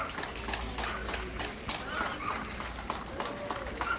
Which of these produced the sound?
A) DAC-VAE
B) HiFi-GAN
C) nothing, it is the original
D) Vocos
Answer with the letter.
C